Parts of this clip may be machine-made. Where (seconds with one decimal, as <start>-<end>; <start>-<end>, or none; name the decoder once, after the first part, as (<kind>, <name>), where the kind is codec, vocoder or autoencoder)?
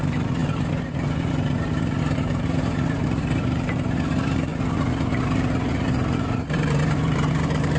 0.0-4.5 (vocoder, BigVGAN v2); 5.2-7.8